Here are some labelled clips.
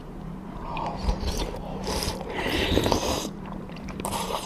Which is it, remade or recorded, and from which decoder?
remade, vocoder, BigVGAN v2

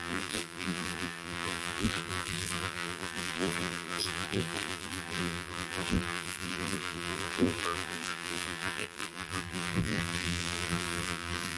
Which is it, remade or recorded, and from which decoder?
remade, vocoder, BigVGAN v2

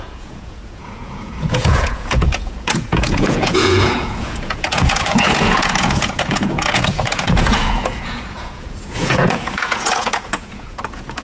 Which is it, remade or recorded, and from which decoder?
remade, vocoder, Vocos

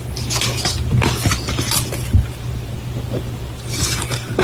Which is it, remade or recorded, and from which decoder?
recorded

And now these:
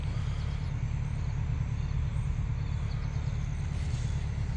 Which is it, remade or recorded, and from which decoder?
recorded